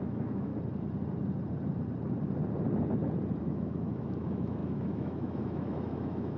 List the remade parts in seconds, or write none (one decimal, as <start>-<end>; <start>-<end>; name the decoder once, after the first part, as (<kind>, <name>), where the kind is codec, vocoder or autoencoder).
0.0-0.5 (autoencoder, DAC-VAE); 3.4-6.4